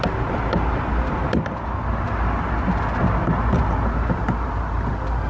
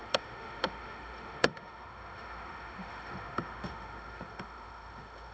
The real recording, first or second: first